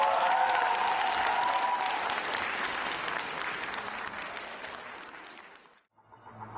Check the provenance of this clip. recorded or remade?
recorded